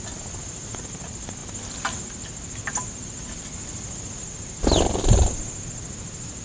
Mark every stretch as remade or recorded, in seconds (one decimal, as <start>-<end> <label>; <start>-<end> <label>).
0.0-6.4 recorded